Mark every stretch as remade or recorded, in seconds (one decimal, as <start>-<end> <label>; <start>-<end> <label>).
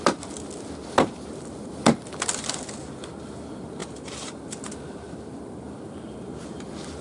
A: 0.0-7.0 recorded